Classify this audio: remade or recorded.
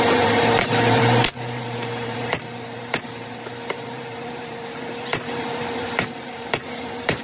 remade